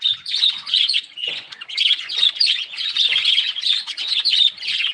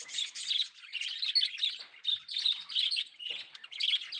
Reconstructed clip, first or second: first